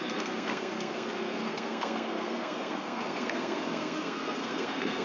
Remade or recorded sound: remade